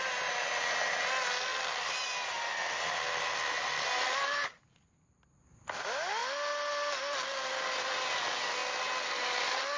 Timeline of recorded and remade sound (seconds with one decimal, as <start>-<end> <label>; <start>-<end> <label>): 0.0-9.8 recorded